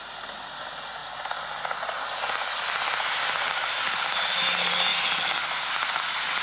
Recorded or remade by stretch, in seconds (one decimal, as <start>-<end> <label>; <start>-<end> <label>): 0.0-6.4 recorded